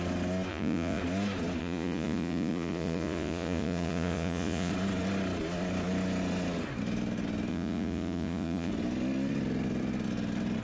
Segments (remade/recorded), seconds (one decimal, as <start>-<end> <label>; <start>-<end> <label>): 0.0-0.5 recorded; 0.5-1.0 remade; 1.0-1.6 recorded; 1.6-4.7 remade; 4.7-7.5 recorded; 7.5-8.7 remade; 8.7-10.6 recorded